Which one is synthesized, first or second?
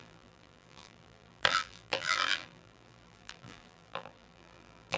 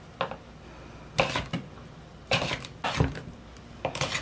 first